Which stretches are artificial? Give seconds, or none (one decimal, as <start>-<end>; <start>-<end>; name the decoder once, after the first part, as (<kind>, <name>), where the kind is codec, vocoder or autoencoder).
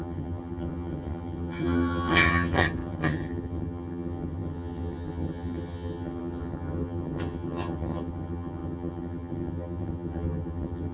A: 0.0-10.9 (vocoder, HiFi-GAN)